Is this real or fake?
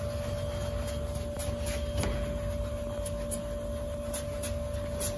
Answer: real